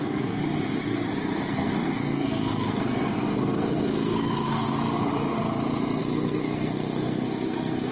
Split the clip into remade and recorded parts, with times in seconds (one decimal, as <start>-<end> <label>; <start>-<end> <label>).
0.0-0.4 remade; 0.4-1.5 recorded; 1.5-4.7 remade; 4.7-6.0 recorded; 6.0-7.9 remade

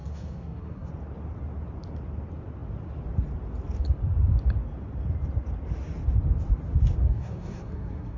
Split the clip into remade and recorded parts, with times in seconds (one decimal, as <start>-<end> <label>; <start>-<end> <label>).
0.0-0.9 remade; 0.9-7.0 recorded; 7.0-8.2 remade

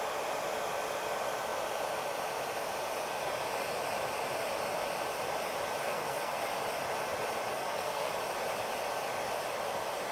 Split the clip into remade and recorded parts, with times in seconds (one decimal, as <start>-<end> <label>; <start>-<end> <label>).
0.0-5.8 recorded; 5.8-6.4 remade; 6.4-7.5 recorded; 7.5-8.1 remade; 8.1-10.1 recorded

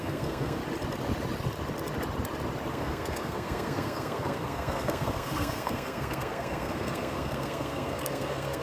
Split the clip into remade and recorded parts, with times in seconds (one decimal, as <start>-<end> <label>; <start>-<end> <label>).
0.0-0.6 remade; 0.6-2.7 recorded; 2.7-8.6 remade